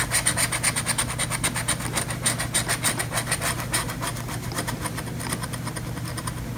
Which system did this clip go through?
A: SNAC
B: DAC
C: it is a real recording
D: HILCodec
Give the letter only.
C